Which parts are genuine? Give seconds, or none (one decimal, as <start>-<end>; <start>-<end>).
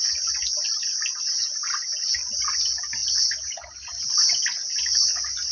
0.0-5.5